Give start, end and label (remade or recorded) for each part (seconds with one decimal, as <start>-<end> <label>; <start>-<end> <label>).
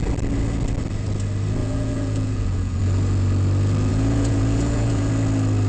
0.0-1.6 recorded; 1.6-2.8 remade; 2.8-3.9 recorded; 3.9-5.1 remade; 5.1-5.7 recorded